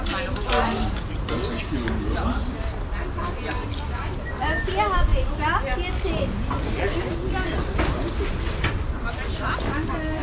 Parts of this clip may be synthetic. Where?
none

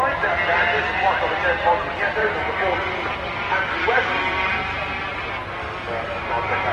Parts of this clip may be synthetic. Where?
5.6-6.2 (codec, DAC)